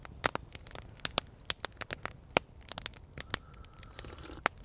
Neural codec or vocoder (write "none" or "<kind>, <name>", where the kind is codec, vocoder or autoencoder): none